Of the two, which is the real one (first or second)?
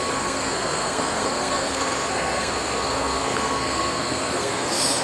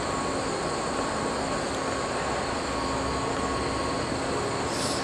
second